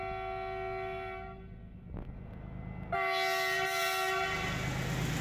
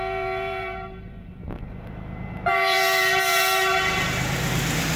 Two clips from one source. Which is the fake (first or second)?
second